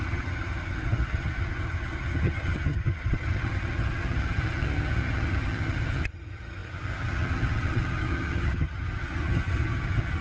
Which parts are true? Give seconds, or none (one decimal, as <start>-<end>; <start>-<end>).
none